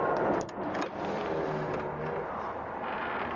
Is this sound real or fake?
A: real